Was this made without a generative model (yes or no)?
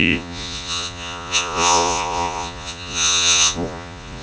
no